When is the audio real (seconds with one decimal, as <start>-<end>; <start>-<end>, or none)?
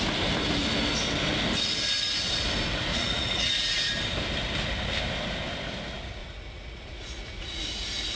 0.0-2.9; 3.9-6.2; 7.6-8.2